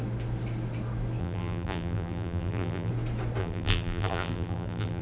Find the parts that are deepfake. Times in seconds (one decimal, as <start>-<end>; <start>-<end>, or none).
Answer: 1.2-2.9; 3.4-5.0